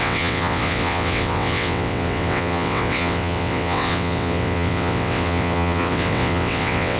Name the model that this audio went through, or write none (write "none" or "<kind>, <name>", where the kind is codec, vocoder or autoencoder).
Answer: vocoder, WaveNeXt